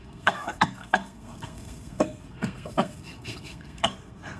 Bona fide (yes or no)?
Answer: no